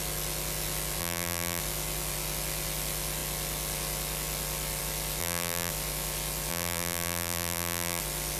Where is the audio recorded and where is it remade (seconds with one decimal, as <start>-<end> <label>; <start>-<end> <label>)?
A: 0.0-1.0 recorded; 1.0-1.6 remade; 1.6-5.2 recorded; 5.2-5.7 remade; 5.7-6.5 recorded; 6.5-8.0 remade; 8.0-8.4 recorded